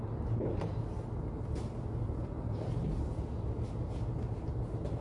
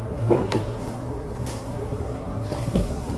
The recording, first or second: first